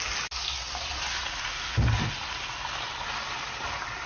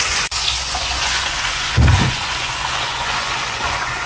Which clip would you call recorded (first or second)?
first